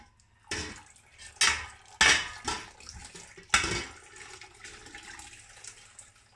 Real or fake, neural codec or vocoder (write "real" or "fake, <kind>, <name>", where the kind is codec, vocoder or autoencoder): real